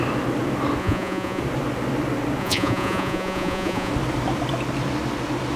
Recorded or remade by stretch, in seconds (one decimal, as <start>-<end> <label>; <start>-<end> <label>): 0.0-0.8 recorded; 0.8-1.4 remade; 1.4-2.4 recorded; 2.4-3.9 remade; 3.9-5.6 recorded